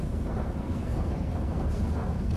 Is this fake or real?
fake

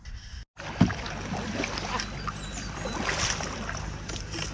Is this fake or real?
real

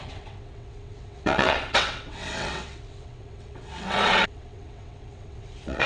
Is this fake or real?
fake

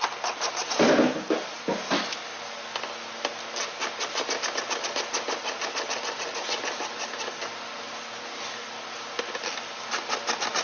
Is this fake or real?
real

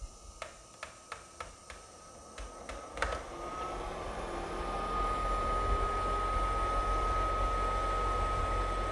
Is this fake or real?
real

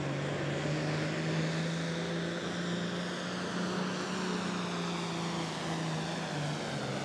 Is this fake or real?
real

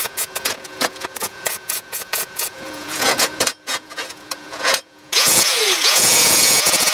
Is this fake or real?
fake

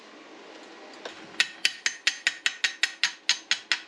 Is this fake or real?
real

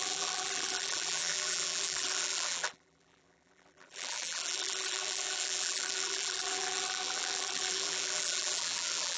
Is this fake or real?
fake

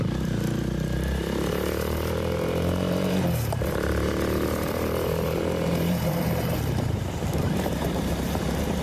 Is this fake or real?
fake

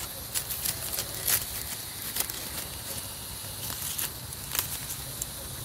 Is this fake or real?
real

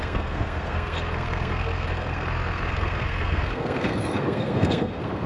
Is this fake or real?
fake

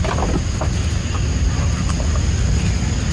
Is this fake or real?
real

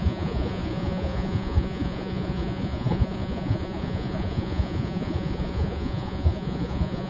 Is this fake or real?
fake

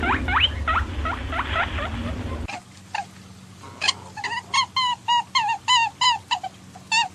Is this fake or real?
real